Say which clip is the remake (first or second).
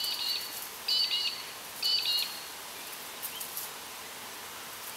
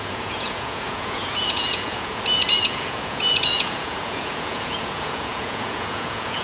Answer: second